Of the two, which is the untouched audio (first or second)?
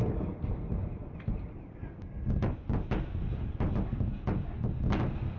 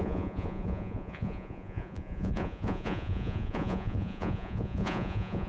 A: first